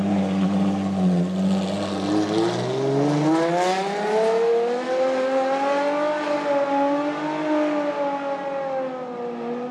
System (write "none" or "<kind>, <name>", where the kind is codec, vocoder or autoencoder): none